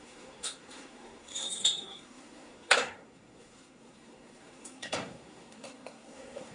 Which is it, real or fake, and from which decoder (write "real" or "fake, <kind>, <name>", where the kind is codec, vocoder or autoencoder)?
fake, codec, SNAC